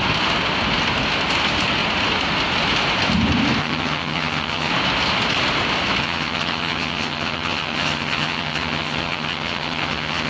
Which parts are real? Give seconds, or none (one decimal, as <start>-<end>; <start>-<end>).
0.0-3.6; 4.7-6.0